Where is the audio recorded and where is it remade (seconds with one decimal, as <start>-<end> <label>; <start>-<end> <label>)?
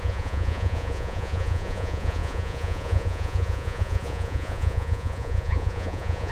0.0-6.3 remade